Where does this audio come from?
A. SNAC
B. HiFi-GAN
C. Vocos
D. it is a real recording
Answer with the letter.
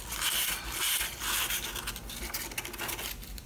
D